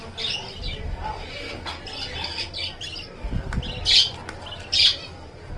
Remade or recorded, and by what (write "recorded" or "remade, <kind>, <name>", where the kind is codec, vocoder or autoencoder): recorded